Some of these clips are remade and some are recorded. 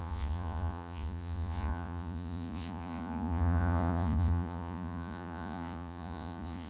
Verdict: remade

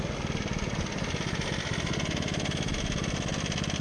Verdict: recorded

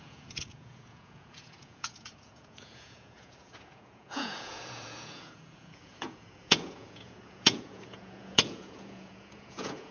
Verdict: remade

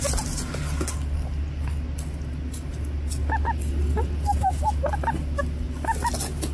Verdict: recorded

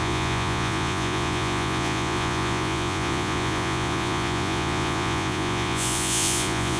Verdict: remade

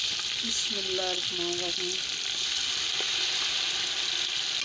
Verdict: recorded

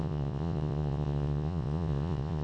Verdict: remade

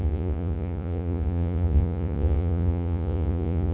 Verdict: remade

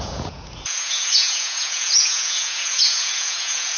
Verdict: remade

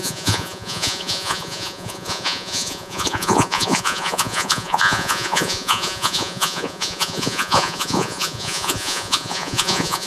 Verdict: remade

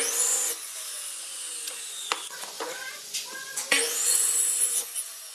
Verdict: remade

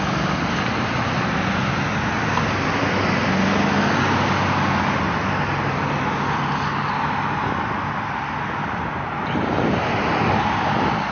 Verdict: recorded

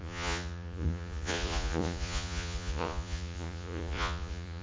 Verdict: remade